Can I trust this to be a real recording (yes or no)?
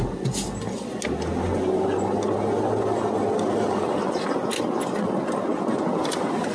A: yes